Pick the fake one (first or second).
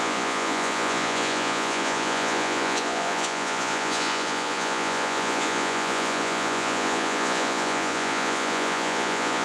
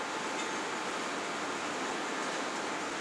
first